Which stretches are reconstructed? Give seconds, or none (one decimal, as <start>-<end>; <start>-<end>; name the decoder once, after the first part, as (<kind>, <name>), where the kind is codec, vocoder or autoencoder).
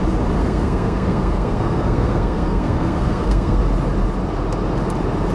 0.4-3.6 (codec, SNAC)